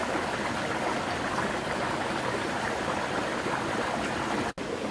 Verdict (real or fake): real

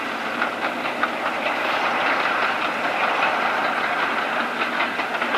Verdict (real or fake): real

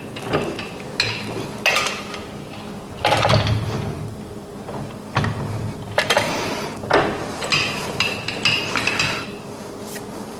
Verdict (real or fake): real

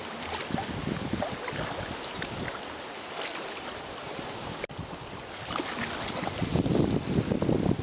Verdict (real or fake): real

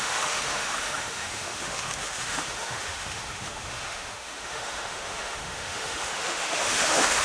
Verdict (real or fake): fake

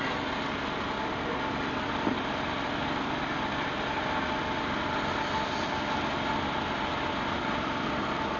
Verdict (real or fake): real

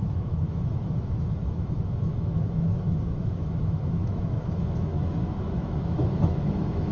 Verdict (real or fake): fake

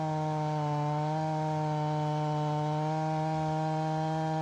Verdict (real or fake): real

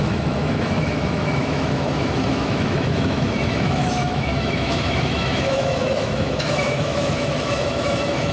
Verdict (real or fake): fake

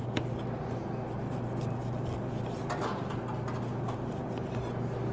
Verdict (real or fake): real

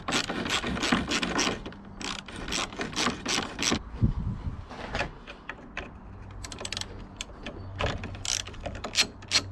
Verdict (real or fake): real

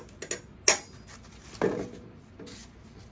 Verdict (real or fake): real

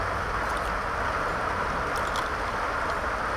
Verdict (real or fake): real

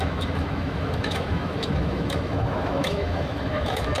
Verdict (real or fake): fake